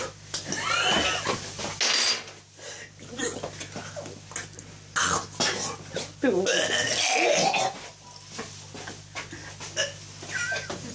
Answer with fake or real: real